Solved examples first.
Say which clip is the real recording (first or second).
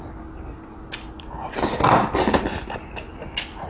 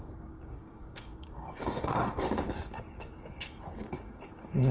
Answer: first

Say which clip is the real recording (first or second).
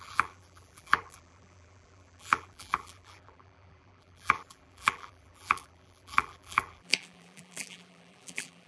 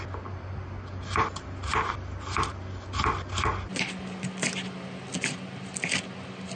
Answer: second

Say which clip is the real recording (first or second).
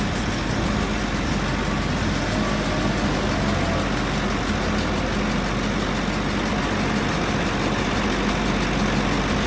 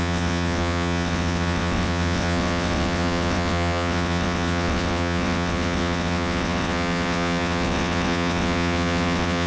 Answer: first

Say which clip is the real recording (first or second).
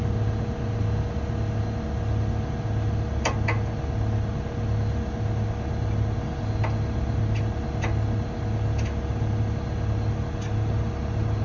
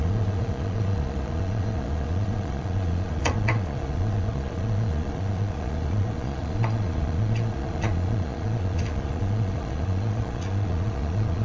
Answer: first